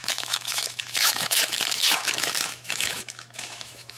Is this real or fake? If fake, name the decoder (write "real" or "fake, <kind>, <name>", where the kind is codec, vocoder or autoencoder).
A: fake, autoencoder, DAC-VAE